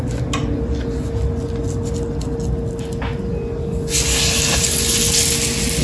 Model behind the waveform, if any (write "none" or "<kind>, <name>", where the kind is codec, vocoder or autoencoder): none